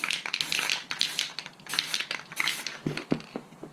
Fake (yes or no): no